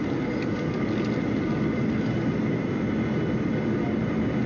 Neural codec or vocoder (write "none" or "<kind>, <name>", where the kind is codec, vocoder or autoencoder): none